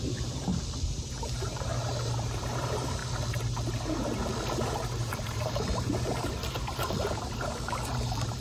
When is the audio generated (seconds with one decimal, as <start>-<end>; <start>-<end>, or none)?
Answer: 0.0-0.5; 1.1-3.0; 5.1-6.4; 7.9-8.4